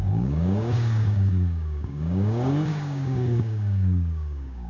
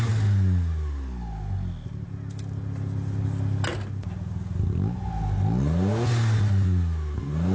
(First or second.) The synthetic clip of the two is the first